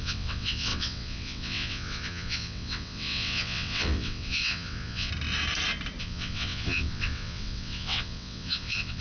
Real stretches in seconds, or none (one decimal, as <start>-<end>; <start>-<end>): 5.1-6.0